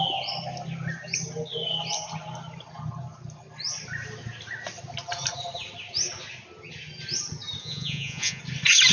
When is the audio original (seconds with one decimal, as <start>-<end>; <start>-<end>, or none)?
0.0-7.6; 8.4-8.9